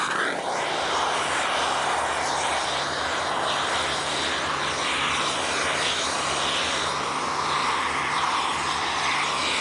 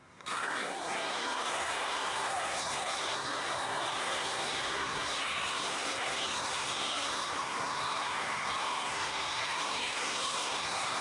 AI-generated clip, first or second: second